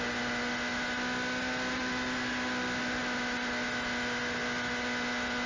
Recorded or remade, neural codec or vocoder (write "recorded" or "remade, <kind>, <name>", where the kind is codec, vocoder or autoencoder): recorded